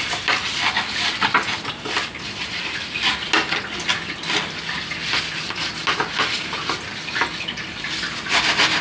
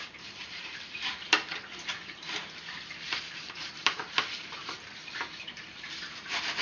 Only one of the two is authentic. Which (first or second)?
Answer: first